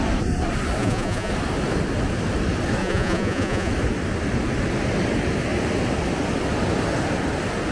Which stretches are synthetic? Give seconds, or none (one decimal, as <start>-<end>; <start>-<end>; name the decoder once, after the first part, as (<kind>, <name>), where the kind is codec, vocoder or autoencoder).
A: 0.8-1.3 (vocoder, Vocos); 2.8-3.7